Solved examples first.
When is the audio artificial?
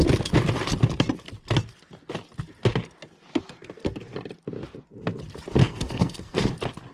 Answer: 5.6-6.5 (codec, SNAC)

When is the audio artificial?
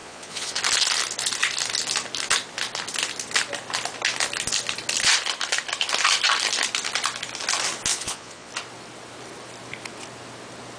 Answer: 0.0-0.6 (vocoder, Vocos); 7.9-8.5